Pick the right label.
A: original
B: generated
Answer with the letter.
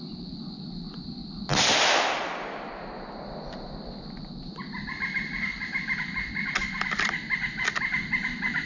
A